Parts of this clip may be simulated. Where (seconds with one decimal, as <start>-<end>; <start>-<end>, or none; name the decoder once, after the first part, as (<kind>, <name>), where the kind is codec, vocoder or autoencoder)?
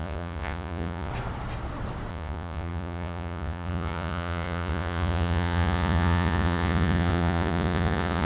0.0-1.1 (vocoder, Vocos); 2.1-8.3